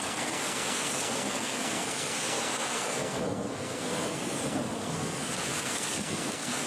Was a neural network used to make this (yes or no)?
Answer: yes